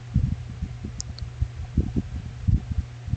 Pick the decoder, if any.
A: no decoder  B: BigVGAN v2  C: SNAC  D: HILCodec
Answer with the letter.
A